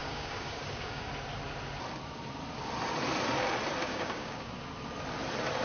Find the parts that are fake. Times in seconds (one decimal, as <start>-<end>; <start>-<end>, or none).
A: 0.0-1.1; 3.8-4.5